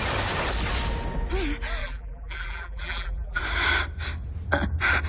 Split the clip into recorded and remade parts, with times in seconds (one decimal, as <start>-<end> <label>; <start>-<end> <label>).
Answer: 0.0-1.8 recorded; 1.8-3.4 remade; 3.4-5.1 recorded